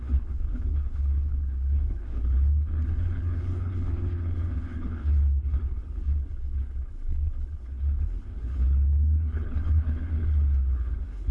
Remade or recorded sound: remade